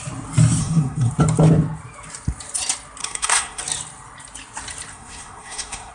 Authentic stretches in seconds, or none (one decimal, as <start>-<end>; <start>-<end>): 0.0-0.6; 1.1-3.0; 3.6-4.9